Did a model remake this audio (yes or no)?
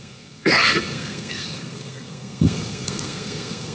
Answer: yes